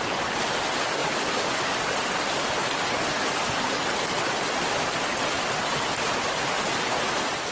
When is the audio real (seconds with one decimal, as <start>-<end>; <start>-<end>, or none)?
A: 0.0-1.0; 1.6-7.5